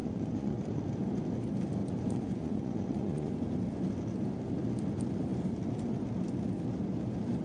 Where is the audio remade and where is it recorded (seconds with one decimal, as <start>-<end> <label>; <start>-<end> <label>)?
0.0-0.8 remade; 0.8-1.8 recorded; 1.8-3.3 remade; 3.3-7.4 recorded